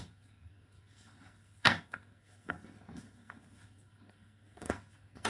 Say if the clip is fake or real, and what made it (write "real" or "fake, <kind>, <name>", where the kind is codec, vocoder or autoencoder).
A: fake, codec, SNAC